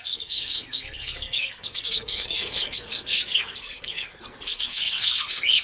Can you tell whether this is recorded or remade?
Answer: remade